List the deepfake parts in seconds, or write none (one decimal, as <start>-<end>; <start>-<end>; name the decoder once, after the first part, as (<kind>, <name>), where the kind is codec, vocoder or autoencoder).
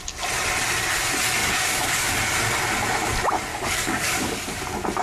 1.4-2.1 (codec, DAC); 3.5-4.6